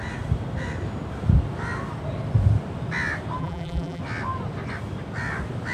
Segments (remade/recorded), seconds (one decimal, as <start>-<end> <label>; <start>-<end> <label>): 0.0-3.4 recorded; 3.4-4.0 remade; 4.0-5.7 recorded